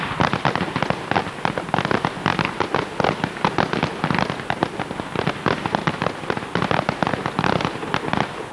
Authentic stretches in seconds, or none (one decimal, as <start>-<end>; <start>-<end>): 0.0-8.5